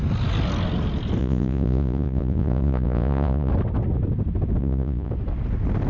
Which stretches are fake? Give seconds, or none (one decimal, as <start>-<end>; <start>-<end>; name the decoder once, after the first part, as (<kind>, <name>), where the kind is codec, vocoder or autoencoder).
1.2-3.5 (vocoder, Vocos); 4.6-5.1